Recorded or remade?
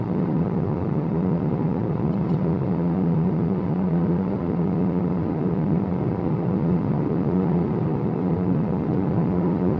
remade